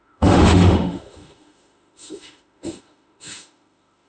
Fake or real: fake